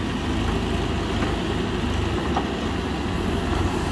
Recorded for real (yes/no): yes